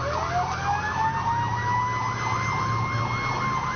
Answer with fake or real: real